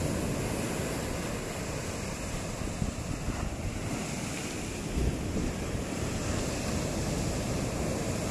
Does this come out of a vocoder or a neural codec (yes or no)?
no